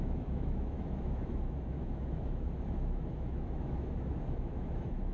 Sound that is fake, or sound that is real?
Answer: fake